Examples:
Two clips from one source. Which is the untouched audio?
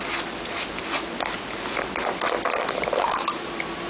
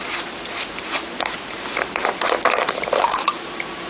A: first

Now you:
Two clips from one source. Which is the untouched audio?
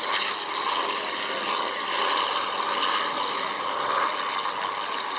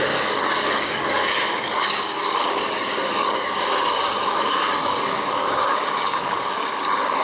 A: first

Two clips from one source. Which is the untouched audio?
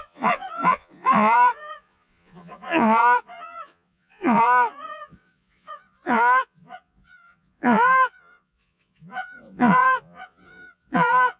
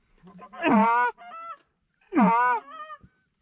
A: second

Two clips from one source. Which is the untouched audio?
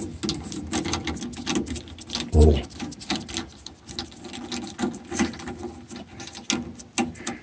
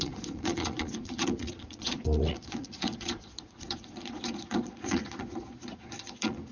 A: first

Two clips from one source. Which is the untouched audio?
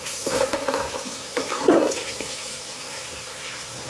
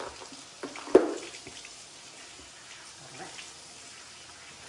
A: second